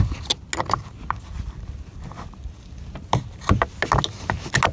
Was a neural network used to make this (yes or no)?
no